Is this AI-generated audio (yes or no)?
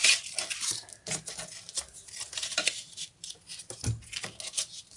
no